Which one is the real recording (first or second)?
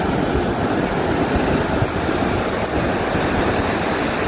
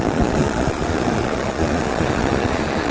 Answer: first